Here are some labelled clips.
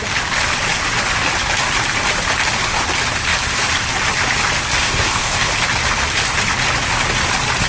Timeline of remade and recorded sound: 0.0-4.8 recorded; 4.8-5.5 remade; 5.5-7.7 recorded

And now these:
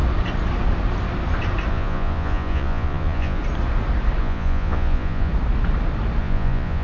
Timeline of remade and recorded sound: 0.0-1.7 recorded; 1.7-3.4 remade; 3.4-4.2 recorded; 4.2-5.3 remade; 5.3-6.2 recorded; 6.2-6.8 remade

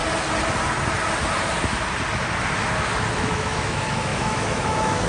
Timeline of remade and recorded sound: 0.0-3.1 recorded; 3.1-5.1 remade

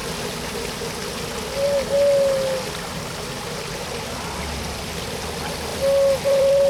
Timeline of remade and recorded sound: 0.0-4.0 recorded; 4.0-5.7 remade; 5.7-6.2 recorded; 6.2-6.7 remade

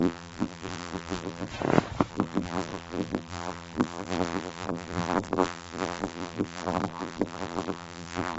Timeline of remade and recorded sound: 0.0-1.5 remade; 1.5-2.1 recorded; 2.1-8.4 remade